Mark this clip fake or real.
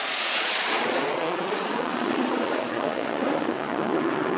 fake